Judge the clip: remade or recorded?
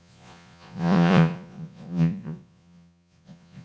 remade